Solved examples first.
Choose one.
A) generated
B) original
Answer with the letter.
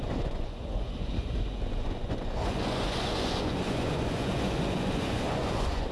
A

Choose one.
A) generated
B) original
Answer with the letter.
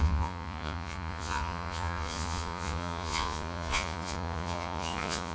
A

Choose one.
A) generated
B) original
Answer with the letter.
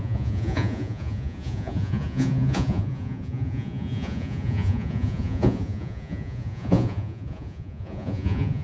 A